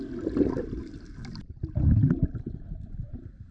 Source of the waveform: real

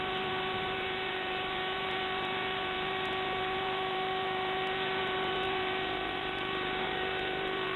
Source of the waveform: fake